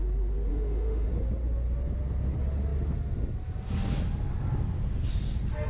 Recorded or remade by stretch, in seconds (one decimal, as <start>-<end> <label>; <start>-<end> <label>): 0.0-0.5 recorded; 0.5-1.1 remade; 1.1-5.7 recorded